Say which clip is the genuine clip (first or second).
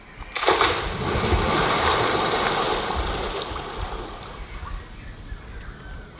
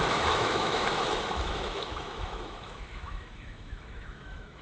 first